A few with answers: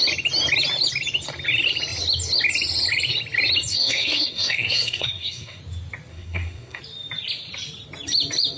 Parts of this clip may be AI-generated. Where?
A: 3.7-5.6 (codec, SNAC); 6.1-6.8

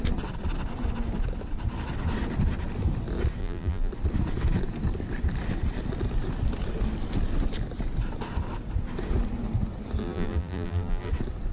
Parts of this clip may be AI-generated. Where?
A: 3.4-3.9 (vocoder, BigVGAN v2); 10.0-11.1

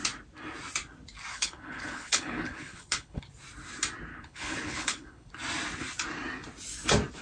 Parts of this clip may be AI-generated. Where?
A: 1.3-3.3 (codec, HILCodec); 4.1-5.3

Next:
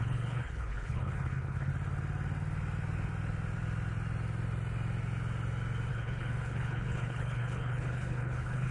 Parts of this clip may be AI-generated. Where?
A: 0.0-1.7 (codec, HILCodec); 5.9-8.7